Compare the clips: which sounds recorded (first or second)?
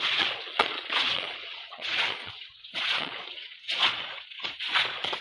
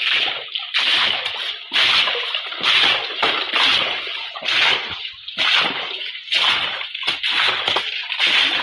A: second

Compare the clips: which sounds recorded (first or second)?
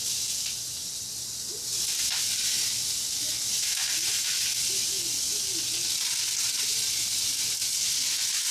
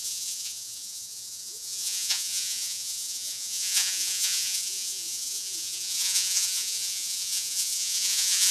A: first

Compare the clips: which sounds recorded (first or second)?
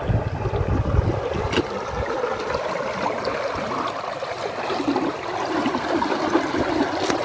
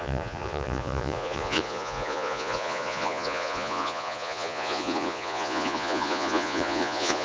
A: first